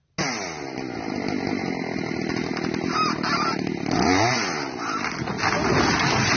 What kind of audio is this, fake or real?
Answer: real